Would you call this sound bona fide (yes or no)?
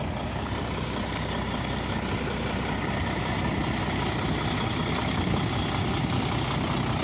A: yes